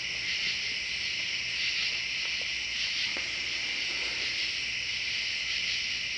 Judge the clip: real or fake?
real